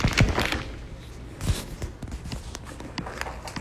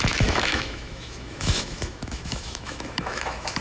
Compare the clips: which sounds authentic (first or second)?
first